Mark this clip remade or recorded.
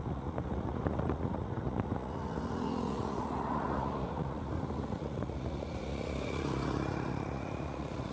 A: remade